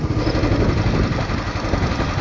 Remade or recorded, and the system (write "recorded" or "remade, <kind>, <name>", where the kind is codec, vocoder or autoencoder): recorded